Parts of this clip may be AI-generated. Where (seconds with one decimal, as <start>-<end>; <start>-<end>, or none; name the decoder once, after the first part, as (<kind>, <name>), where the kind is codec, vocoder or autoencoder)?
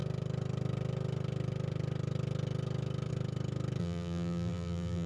3.8-5.1 (vocoder, BigVGAN v2)